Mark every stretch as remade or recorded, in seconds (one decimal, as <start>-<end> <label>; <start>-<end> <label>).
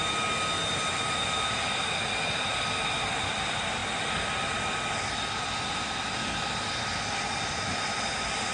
0.0-8.5 recorded